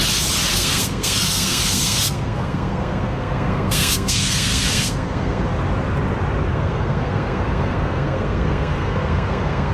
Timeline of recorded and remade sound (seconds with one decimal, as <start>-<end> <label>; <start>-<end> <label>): 0.0-0.5 recorded; 0.5-5.4 remade; 5.4-6.5 recorded; 6.5-9.7 remade